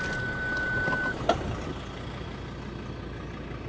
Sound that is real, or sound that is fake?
real